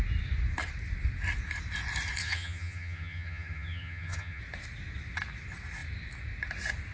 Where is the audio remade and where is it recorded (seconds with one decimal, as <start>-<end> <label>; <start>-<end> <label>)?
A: 0.0-2.2 recorded; 2.2-4.4 remade; 4.4-6.9 recorded